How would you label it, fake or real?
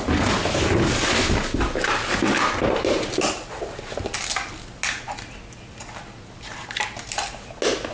real